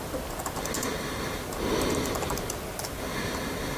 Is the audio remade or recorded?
recorded